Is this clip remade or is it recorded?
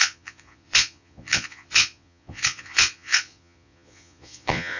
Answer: remade